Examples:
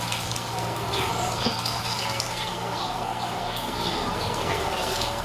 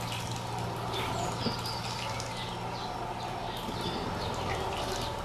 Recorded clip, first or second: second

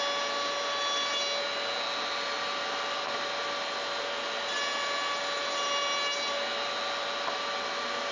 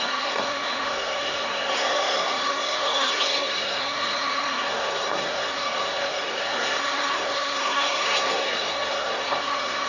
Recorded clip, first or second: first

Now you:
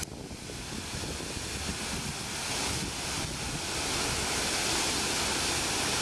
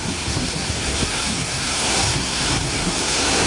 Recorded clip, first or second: first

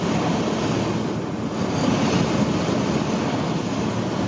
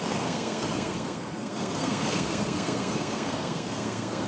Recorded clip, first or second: first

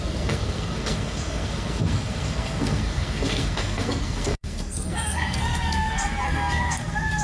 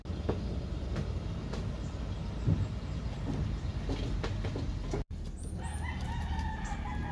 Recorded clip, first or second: second